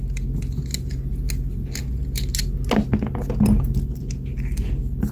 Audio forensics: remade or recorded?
recorded